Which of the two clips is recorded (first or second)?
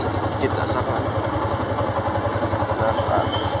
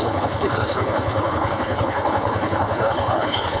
first